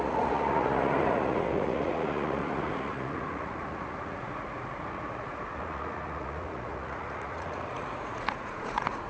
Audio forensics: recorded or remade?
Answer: remade